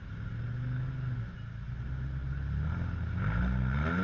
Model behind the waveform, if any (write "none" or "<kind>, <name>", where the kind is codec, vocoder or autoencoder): none